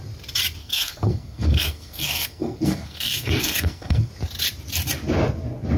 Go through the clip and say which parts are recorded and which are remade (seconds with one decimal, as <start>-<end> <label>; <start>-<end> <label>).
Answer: 0.0-0.6 recorded; 0.6-4.1 remade; 4.1-5.8 recorded